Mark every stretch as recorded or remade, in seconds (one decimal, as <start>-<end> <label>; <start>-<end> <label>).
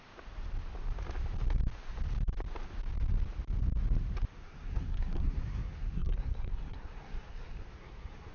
0.0-4.3 recorded; 4.3-8.3 remade